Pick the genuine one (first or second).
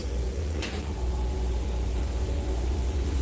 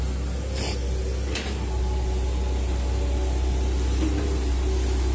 second